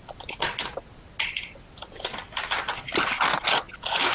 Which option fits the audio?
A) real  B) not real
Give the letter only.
A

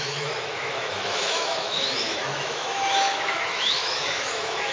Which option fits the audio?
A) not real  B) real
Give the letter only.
A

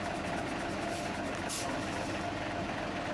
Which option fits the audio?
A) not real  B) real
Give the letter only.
B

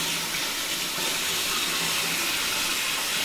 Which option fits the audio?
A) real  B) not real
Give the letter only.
A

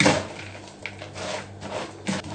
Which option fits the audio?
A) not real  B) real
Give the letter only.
B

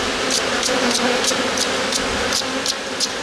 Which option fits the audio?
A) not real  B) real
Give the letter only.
B